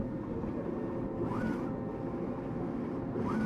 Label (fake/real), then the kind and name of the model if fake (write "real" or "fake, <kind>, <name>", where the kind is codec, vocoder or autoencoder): real